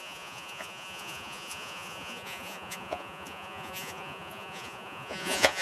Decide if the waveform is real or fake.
fake